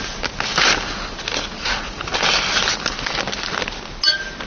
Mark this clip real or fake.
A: real